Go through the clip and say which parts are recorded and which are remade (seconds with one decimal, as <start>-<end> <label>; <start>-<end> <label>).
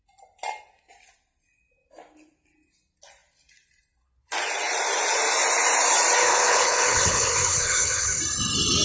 0.0-6.2 recorded; 6.2-8.2 remade; 8.2-8.8 recorded